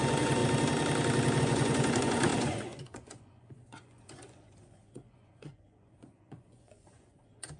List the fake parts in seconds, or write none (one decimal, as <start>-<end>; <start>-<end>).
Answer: 0.0-0.4; 1.4-7.6